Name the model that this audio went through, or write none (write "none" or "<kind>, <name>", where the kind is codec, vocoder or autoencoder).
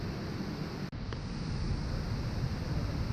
none